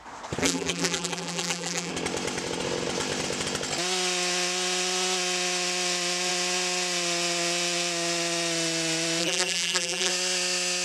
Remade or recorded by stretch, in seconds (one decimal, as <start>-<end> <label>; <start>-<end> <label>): 0.0-0.4 recorded; 0.4-1.9 remade; 1.9-9.2 recorded; 9.2-10.1 remade; 10.1-10.8 recorded